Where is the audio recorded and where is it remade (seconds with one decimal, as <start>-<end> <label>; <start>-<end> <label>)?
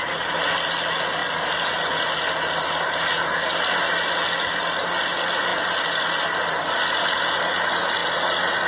0.0-8.7 recorded